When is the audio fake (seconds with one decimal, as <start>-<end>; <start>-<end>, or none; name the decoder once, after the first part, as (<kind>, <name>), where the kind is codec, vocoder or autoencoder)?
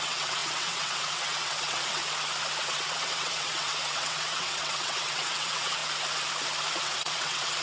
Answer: 0.0-2.0 (vocoder, WaveNeXt); 2.6-5.8; 6.7-7.6